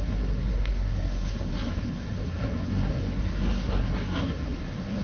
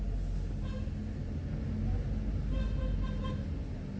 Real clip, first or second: second